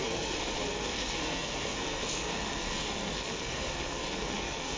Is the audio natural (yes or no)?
no